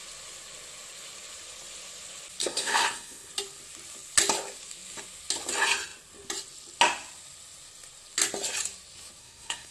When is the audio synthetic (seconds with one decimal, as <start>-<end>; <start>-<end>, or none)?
2.4-3.3; 9.2-9.7